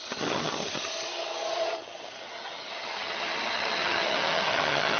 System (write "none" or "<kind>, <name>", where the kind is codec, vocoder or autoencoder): vocoder, HiFi-GAN